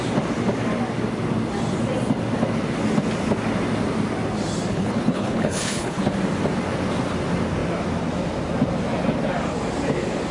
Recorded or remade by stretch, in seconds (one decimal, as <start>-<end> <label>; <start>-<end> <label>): 0.0-4.7 recorded; 4.7-6.0 remade; 6.0-10.3 recorded